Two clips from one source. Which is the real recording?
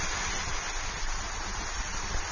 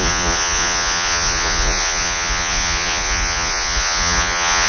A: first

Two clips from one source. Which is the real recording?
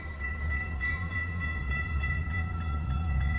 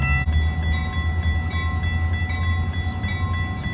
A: second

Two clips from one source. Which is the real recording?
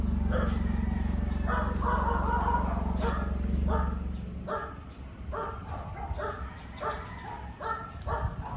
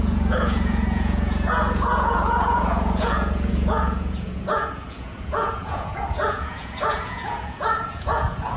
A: first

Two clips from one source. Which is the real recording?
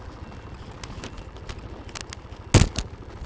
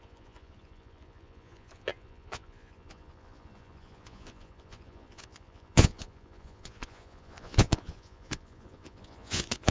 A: first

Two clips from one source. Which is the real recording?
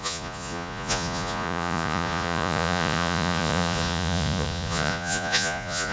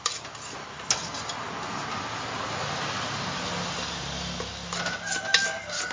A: second